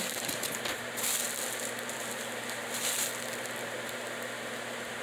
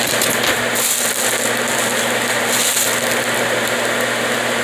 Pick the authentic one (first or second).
second